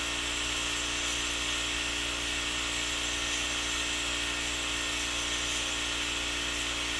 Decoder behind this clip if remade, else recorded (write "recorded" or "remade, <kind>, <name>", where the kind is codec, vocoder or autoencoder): recorded